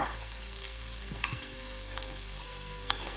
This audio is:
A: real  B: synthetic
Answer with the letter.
B